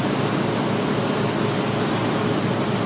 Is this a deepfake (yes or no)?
no